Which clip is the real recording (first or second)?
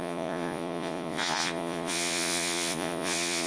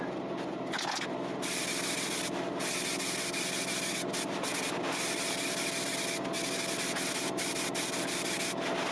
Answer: second